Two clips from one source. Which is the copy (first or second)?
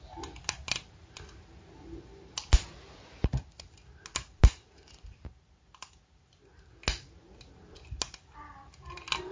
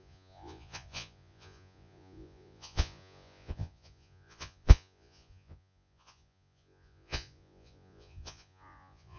second